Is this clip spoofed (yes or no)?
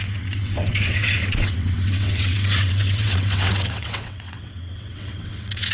yes